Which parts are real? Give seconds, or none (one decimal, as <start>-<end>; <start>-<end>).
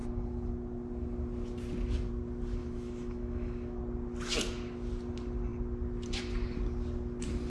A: 0.0-2.6; 3.8-7.5